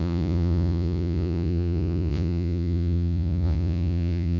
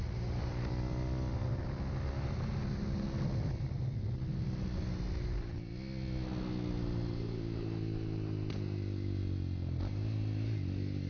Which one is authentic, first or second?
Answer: second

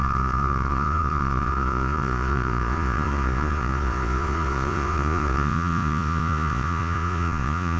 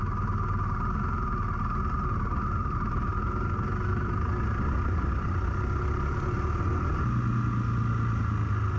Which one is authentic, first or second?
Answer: second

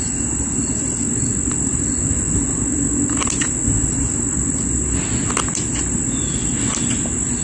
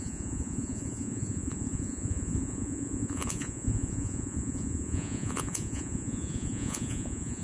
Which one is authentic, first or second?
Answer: first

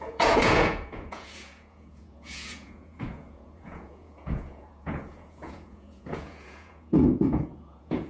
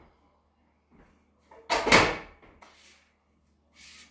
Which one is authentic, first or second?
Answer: second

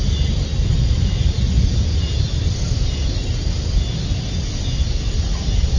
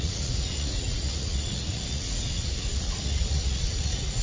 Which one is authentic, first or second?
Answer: first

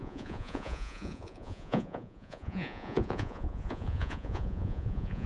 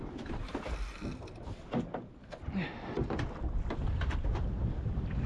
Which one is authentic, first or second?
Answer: second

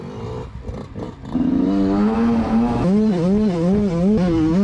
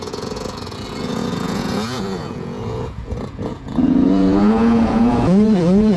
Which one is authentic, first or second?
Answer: first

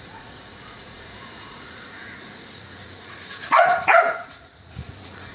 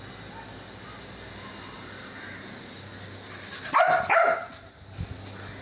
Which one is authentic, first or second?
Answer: second